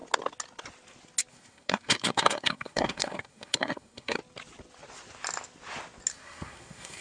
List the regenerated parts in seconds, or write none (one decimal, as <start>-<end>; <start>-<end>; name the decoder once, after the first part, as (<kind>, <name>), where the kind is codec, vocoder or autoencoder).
1.3-4.2 (codec, SNAC); 6.1-7.0